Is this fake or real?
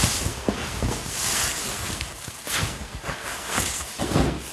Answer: fake